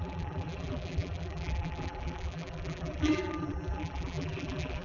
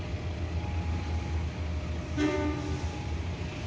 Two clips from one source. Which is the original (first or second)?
second